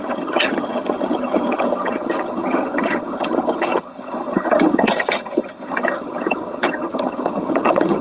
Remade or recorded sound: remade